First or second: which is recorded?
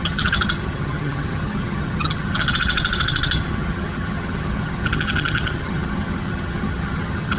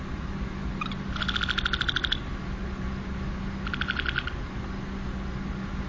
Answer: second